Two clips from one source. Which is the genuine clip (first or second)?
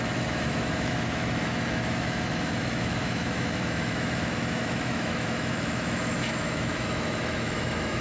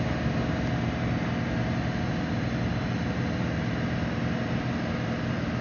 second